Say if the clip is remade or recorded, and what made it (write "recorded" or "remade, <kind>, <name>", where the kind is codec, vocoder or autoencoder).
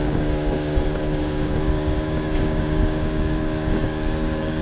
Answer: remade, codec, DAC